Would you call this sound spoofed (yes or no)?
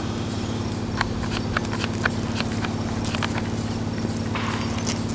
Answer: no